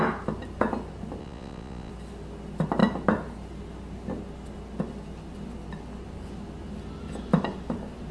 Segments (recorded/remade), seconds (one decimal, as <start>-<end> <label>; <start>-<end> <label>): 0.0-1.2 recorded; 1.2-1.9 remade; 1.9-8.1 recorded